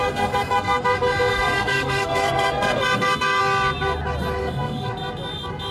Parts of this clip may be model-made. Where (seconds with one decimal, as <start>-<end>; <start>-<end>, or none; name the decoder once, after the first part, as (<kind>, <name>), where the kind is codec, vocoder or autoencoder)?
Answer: 0.0-0.8 (codec, SNAC); 1.3-3.4; 4.4-4.9